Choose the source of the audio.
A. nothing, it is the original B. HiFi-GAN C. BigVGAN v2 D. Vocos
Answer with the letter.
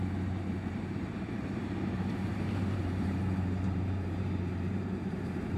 C